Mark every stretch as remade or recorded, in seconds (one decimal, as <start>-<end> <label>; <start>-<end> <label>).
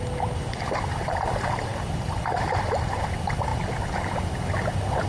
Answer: 0.0-1.7 recorded; 1.7-3.0 remade; 3.0-3.5 recorded; 3.5-4.2 remade; 4.2-5.1 recorded